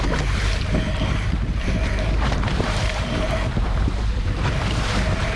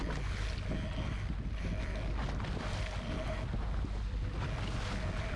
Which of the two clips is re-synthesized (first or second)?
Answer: first